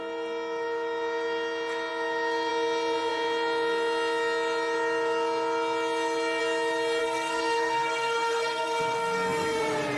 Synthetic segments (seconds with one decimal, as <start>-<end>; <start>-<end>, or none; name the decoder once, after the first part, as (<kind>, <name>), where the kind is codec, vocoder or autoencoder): 7.0-9.6 (codec, SNAC)